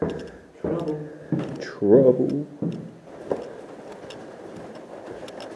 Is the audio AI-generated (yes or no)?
no